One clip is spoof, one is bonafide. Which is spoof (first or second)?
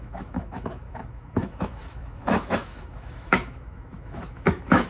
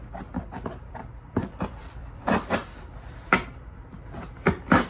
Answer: first